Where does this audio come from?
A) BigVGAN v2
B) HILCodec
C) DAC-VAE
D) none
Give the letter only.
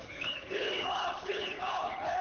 B